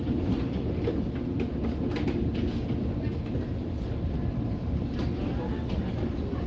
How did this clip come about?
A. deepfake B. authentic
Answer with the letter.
B